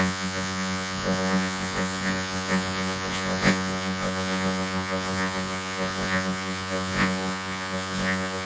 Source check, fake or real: fake